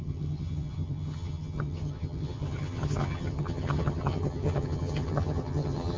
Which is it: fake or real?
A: fake